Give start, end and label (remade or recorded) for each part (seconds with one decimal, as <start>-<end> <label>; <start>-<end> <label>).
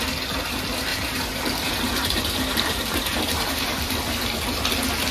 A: 0.0-0.9 recorded; 0.9-4.0 remade; 4.0-5.1 recorded